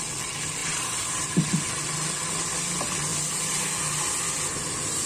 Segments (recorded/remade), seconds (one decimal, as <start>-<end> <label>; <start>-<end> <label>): 0.0-0.6 recorded; 0.6-1.3 remade; 1.3-5.1 recorded